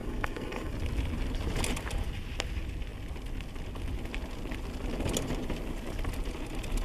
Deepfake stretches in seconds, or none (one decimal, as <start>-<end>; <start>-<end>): 0.0-0.7